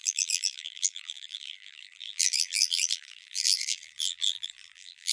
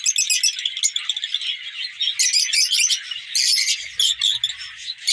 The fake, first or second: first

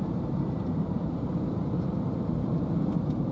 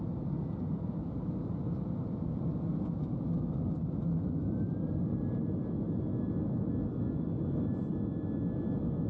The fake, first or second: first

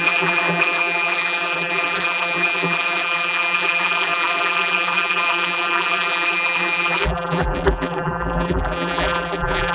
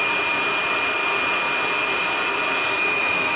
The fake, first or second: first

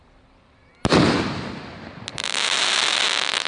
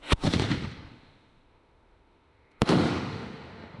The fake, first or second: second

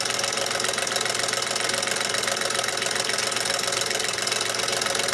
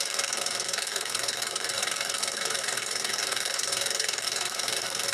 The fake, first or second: second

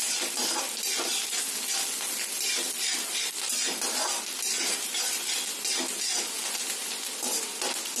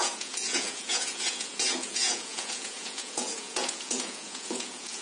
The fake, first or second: second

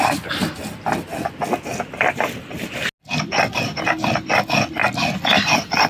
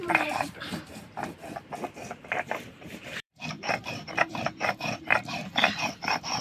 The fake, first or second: second